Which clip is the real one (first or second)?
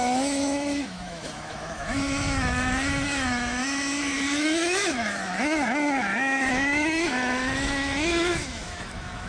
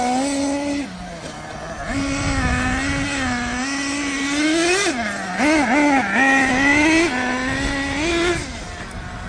second